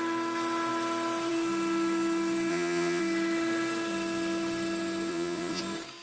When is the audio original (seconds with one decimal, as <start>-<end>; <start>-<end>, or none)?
0.0-2.5; 3.0-5.1; 5.6-6.0